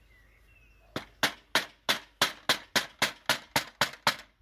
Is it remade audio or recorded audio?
recorded